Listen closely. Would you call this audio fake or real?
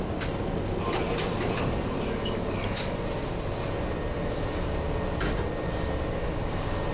real